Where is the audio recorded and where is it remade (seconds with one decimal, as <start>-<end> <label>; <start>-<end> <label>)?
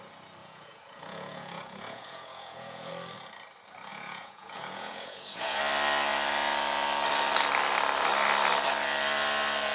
0.0-0.4 recorded; 0.4-2.9 remade; 2.9-3.9 recorded; 3.9-5.6 remade; 5.6-9.7 recorded